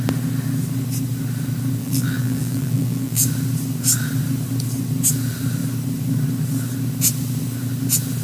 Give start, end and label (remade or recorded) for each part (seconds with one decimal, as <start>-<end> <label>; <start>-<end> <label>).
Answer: 0.0-1.8 recorded; 1.8-3.2 remade; 3.2-8.2 recorded